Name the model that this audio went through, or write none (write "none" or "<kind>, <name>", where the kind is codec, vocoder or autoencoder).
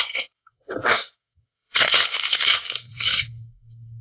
codec, SNAC